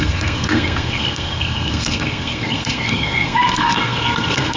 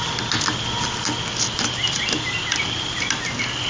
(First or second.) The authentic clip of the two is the second